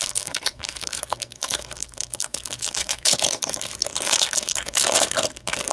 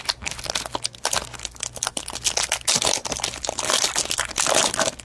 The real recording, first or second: second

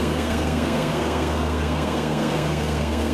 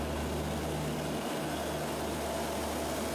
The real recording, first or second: second